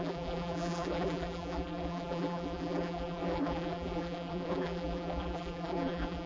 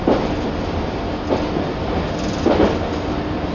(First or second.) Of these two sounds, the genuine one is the second